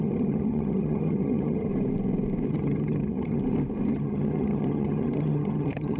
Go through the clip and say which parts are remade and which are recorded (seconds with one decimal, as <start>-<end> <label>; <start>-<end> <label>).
0.0-1.7 remade; 1.7-2.5 recorded; 2.5-3.4 remade; 3.4-3.9 recorded; 3.9-6.0 remade